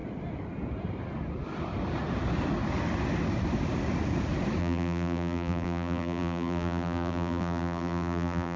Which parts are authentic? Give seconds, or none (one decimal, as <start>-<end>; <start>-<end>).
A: 0.0-4.6